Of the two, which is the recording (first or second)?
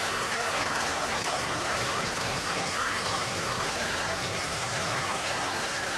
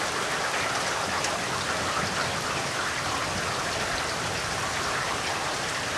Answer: second